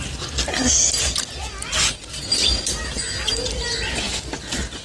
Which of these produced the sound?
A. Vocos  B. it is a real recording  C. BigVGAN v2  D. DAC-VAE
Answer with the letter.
B